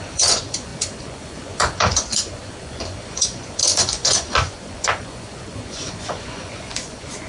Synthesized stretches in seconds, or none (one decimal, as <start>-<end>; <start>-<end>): 0.0-7.3

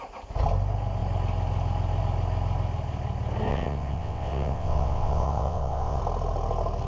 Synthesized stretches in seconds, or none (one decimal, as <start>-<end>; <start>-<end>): 3.5-6.0

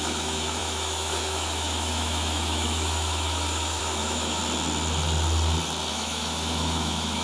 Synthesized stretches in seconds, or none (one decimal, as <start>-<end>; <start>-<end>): 0.0-4.4; 5.9-7.2

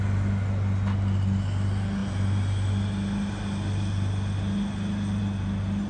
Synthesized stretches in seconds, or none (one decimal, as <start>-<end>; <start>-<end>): none

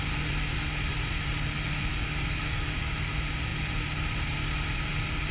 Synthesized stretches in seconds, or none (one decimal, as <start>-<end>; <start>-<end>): 1.9-3.1

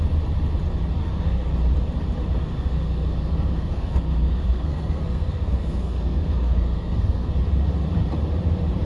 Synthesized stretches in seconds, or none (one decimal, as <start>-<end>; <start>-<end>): 1.0-1.5; 2.4-7.3